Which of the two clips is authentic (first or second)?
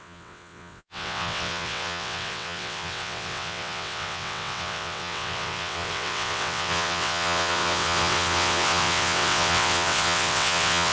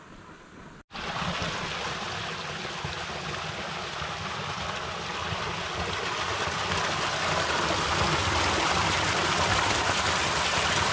second